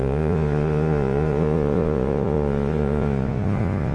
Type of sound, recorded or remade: remade